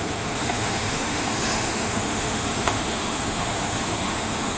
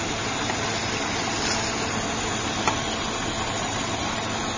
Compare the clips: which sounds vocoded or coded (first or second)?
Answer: first